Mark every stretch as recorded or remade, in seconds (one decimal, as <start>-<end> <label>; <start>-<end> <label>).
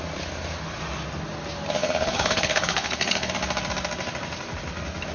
0.0-1.8 recorded; 1.8-3.3 remade; 3.3-5.1 recorded